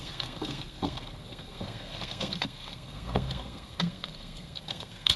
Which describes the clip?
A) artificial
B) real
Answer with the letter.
A